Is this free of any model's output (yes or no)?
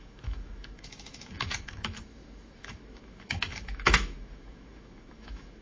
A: no